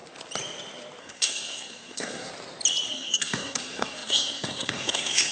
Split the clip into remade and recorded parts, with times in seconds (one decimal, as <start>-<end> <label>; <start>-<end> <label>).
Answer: 0.0-1.0 recorded; 1.0-2.3 remade; 2.3-2.9 recorded; 2.9-5.3 remade